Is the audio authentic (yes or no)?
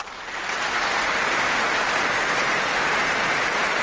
yes